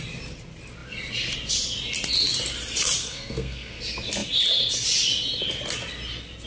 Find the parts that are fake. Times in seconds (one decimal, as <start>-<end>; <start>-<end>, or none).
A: 3.0-3.8